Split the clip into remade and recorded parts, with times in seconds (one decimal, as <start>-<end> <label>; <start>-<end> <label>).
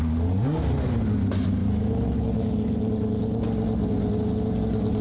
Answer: 0.0-1.6 recorded; 1.6-2.2 remade; 2.2-5.0 recorded